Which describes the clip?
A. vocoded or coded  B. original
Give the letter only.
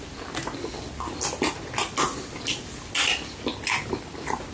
B